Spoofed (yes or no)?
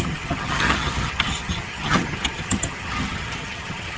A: yes